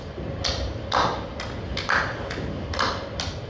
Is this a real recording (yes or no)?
yes